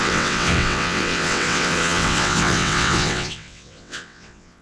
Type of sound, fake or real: fake